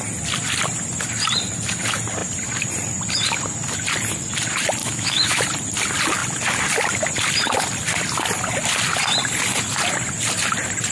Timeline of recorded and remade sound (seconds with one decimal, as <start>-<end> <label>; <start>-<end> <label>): 0.0-4.8 recorded; 4.8-5.4 remade; 5.4-10.9 recorded